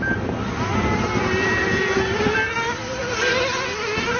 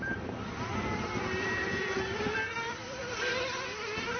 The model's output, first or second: second